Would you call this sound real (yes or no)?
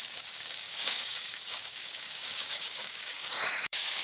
no